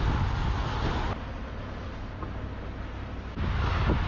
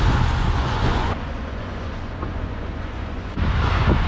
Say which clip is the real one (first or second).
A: first